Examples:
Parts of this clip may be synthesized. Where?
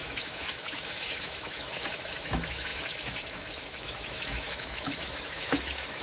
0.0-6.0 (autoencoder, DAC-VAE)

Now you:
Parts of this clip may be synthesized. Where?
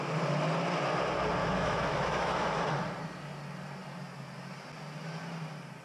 1.4-2.7 (autoencoder, DAC-VAE)